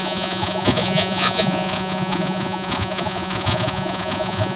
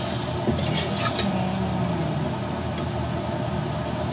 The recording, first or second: second